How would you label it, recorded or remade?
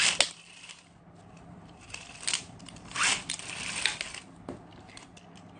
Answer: recorded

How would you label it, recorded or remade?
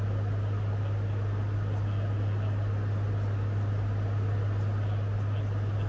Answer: recorded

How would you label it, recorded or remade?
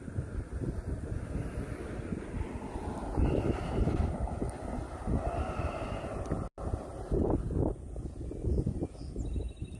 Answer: recorded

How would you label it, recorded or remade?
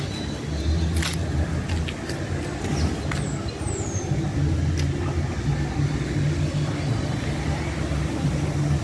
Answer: recorded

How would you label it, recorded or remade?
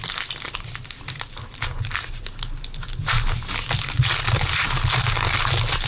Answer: recorded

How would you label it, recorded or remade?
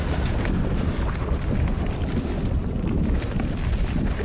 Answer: remade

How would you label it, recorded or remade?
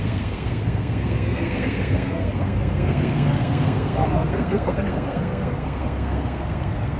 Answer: remade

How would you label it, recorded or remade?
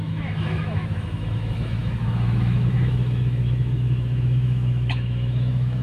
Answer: remade